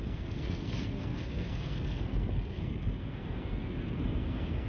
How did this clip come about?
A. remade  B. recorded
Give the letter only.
A